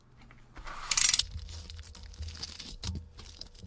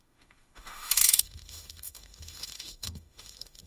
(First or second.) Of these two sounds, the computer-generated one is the second